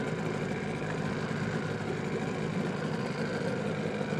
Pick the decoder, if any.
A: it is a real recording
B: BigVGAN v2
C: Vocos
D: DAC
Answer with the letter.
A